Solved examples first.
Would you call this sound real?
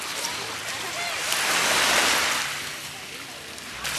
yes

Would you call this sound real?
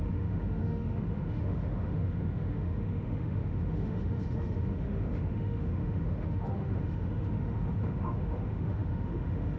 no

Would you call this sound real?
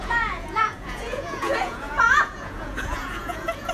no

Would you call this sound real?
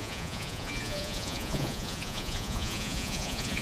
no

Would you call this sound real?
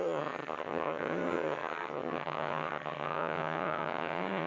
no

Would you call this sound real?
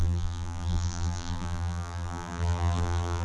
no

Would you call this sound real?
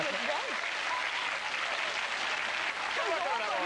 yes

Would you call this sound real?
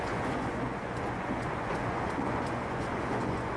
no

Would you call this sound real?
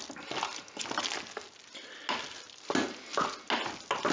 yes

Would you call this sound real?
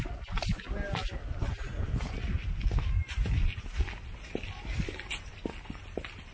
yes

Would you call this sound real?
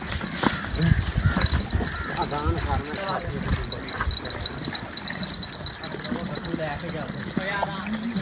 yes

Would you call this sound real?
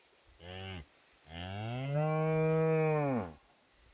yes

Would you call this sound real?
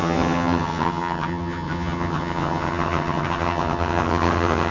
no